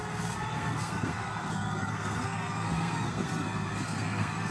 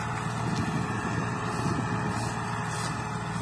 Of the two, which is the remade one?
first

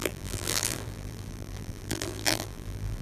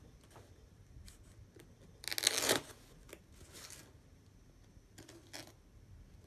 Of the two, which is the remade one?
first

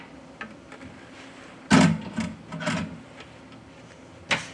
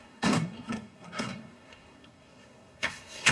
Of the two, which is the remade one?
second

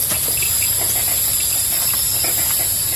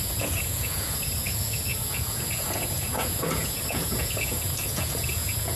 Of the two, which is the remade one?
second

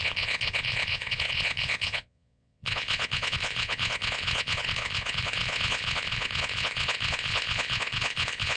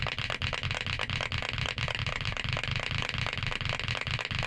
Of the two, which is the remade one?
first